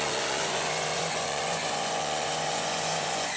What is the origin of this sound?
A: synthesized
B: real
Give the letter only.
A